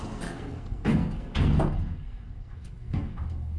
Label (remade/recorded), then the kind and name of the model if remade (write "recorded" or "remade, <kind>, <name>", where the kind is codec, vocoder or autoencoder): remade, codec, SNAC